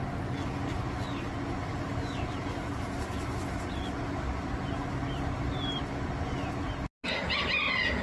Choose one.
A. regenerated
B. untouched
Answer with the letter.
B